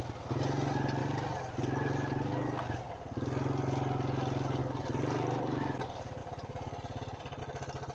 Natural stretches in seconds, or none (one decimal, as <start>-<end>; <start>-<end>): 0.0-7.9